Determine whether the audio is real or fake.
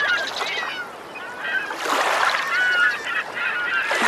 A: real